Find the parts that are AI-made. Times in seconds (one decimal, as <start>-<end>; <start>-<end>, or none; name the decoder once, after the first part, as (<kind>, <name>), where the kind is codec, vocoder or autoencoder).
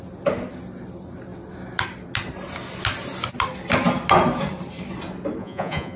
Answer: 5.4-6.0 (vocoder, Vocos)